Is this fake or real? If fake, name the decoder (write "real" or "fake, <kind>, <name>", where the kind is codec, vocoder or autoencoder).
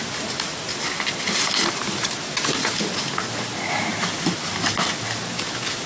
real